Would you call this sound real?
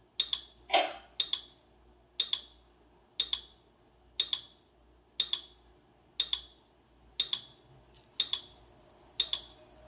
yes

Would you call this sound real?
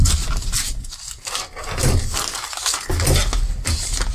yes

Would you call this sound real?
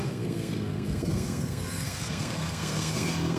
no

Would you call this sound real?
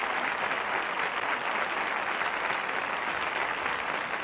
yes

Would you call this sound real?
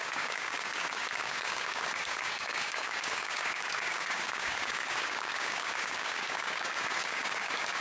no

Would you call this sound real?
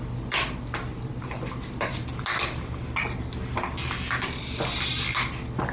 yes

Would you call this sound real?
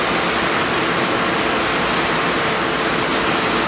yes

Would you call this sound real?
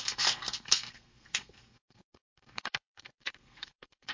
no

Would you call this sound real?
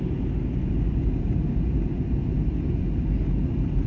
yes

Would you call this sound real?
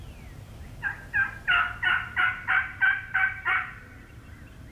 no